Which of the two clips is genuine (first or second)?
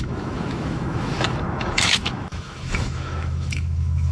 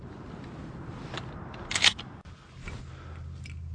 second